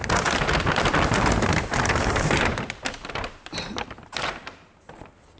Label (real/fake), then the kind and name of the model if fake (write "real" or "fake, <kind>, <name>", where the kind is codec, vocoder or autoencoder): real